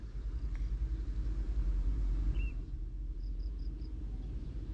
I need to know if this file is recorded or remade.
remade